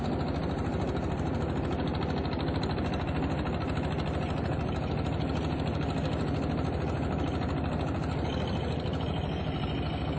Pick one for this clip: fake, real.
real